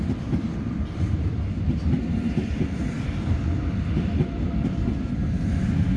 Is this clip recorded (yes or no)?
yes